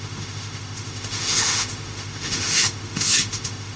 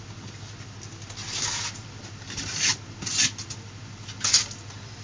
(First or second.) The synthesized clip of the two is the first